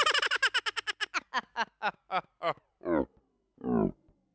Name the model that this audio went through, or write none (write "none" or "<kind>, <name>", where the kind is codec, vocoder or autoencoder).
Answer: none